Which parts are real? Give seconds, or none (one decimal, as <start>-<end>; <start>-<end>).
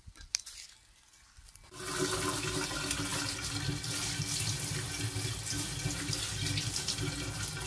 0.0-7.7